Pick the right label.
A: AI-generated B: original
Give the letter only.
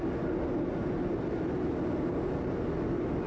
B